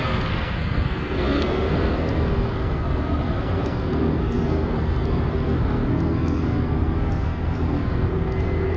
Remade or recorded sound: remade